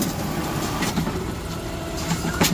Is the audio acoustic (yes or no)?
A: no